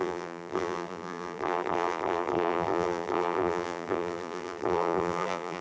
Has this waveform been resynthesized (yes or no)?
yes